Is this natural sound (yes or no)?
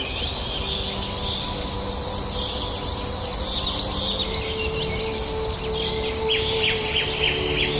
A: yes